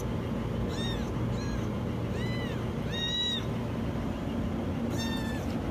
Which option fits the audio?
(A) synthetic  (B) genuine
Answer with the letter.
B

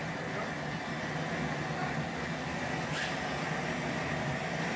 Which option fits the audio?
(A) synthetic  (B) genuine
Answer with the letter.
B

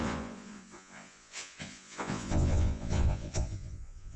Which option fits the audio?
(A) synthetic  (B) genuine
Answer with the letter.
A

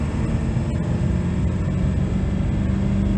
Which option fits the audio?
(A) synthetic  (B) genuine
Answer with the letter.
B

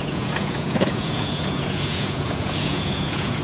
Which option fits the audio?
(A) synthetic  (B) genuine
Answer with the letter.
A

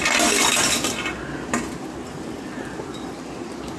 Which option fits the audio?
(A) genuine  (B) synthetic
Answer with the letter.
A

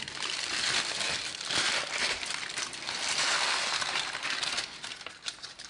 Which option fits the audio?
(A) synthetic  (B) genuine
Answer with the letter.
B